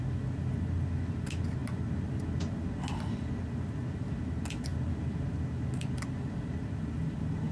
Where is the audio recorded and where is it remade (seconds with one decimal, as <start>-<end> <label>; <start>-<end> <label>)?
0.0-7.5 recorded